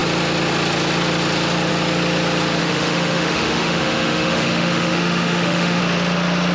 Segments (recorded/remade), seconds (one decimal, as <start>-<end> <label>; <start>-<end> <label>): 0.0-2.6 recorded; 2.6-5.8 remade; 5.8-6.5 recorded

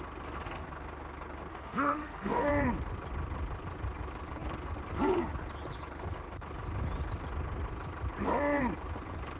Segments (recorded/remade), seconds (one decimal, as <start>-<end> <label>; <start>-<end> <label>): 0.0-1.5 recorded; 1.5-2.5 remade; 2.5-9.4 recorded

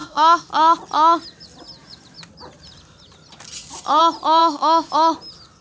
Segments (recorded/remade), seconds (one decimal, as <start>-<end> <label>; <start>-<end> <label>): 0.0-0.5 remade; 0.5-4.4 recorded; 4.4-4.9 remade; 4.9-5.6 recorded

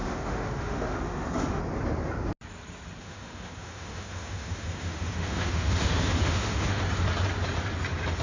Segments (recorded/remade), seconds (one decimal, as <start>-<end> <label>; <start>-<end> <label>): 0.0-1.6 remade; 1.6-3.0 recorded; 3.0-6.8 remade; 6.8-8.2 recorded

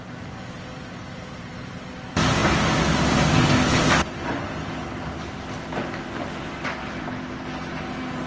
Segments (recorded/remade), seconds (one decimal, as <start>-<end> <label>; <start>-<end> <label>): 0.0-8.3 recorded

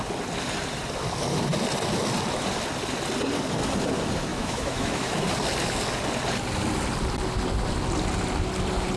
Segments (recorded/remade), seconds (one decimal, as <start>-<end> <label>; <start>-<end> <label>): 0.0-4.3 recorded; 4.3-5.3 remade; 5.3-9.0 recorded

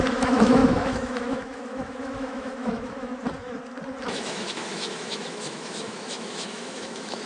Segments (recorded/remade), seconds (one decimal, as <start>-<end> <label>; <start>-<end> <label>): 0.0-3.1 remade; 3.1-4.1 recorded; 4.1-7.3 remade

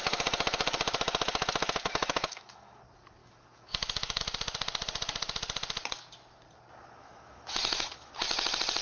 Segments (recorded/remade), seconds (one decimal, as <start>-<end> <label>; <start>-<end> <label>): 0.0-2.8 remade; 2.8-3.2 recorded; 3.2-4.2 remade; 4.2-7.0 recorded; 7.0-8.1 remade; 8.1-8.8 recorded